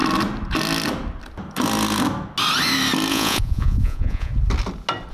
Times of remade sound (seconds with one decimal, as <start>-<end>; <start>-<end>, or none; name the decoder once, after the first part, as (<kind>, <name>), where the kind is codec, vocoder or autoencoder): 3.1-4.3 (vocoder, Vocos)